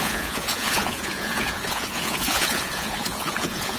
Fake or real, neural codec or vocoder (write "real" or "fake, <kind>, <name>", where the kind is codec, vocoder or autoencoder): fake, vocoder, Vocos